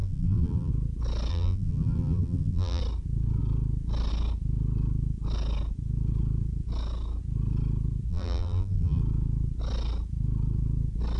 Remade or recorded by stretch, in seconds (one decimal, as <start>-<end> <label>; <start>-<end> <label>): 0.0-0.7 remade; 0.7-1.3 recorded; 1.3-2.8 remade; 2.8-8.1 recorded; 8.1-9.0 remade; 9.0-11.2 recorded